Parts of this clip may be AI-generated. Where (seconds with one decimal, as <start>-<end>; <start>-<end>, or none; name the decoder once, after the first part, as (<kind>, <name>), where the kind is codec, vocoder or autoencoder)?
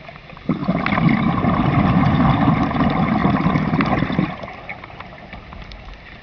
0.0-0.6 (vocoder, BigVGAN v2); 1.7-3.2; 4.0-6.2